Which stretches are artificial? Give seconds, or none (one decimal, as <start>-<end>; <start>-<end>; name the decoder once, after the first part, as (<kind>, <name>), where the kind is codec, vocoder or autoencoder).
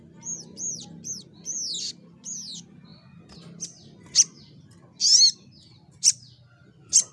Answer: none